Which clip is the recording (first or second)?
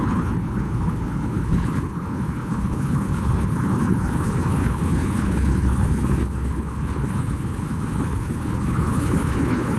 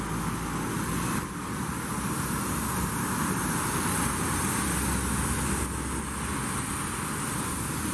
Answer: second